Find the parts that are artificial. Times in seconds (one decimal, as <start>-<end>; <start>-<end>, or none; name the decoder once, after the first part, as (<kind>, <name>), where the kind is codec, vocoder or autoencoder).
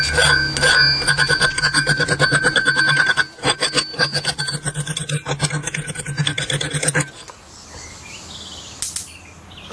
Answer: none